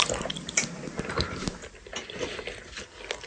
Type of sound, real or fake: real